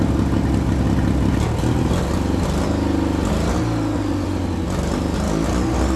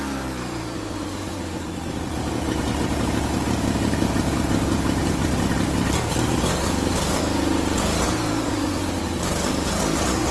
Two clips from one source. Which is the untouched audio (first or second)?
first